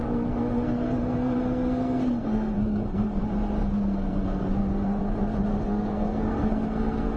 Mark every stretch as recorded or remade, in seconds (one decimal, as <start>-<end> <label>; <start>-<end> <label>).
0.0-3.2 remade; 3.2-3.6 recorded; 3.6-5.0 remade; 5.0-5.5 recorded; 5.5-7.2 remade